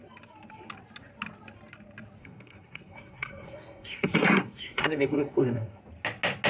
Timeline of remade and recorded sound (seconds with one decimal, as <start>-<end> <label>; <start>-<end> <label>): 0.0-2.2 recorded; 2.2-5.8 remade; 5.8-6.5 recorded